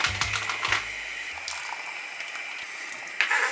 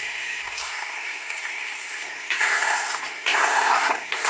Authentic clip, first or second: first